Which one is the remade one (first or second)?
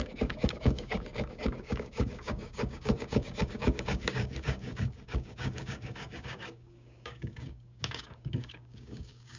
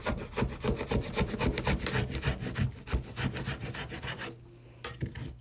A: first